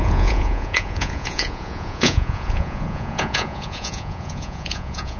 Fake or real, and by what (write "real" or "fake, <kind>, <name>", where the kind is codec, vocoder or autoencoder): fake, vocoder, Vocos